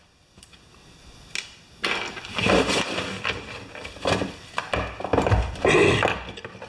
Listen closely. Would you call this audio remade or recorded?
recorded